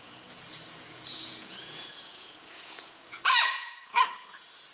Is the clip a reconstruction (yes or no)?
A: yes